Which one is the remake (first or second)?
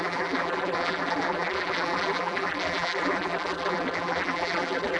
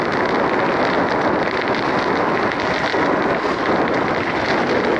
first